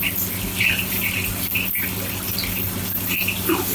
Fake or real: real